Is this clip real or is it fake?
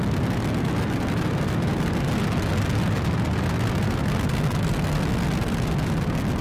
real